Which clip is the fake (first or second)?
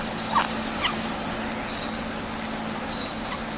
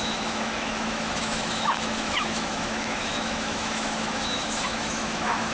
second